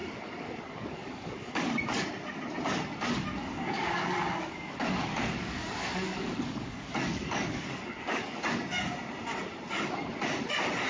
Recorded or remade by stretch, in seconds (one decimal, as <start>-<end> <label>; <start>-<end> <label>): 0.0-1.8 remade; 1.8-3.4 recorded; 3.4-8.4 remade; 8.4-10.9 recorded